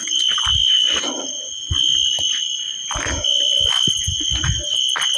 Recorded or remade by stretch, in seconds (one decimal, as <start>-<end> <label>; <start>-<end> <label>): 0.0-5.2 recorded